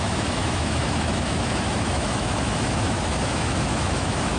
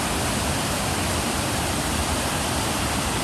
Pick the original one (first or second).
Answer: second